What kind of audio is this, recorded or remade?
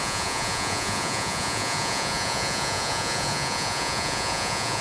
remade